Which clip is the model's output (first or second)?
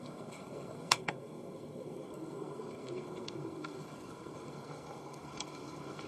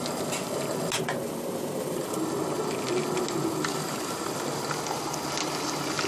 first